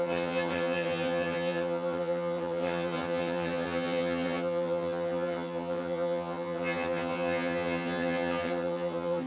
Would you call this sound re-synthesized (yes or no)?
yes